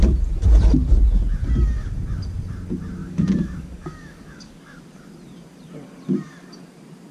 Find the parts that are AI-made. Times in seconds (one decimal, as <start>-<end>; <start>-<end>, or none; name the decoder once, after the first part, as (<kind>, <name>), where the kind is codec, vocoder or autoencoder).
3.0-4.8 (codec, DAC)